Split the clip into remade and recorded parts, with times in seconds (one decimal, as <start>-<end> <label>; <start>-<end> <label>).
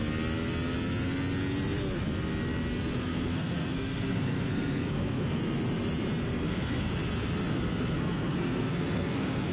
0.0-3.0 recorded; 3.0-5.4 remade; 5.4-6.2 recorded; 6.2-6.9 remade; 6.9-7.5 recorded; 7.5-9.5 remade